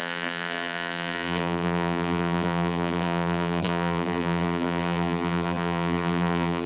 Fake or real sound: fake